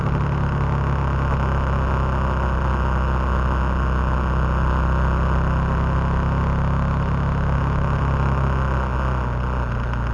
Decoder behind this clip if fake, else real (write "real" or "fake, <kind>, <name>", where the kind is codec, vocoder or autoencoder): real